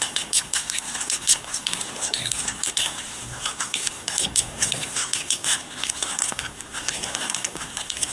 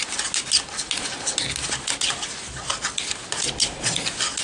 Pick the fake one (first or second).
first